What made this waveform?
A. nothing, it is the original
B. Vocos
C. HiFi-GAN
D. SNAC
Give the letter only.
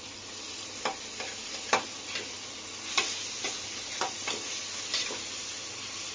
A